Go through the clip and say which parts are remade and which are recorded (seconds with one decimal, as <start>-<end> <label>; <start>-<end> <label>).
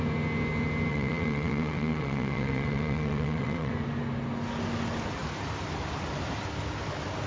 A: 0.0-0.9 recorded; 0.9-3.7 remade; 3.7-7.3 recorded